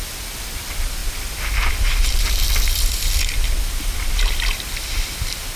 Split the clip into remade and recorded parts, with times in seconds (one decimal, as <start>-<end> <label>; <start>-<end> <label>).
0.0-5.6 recorded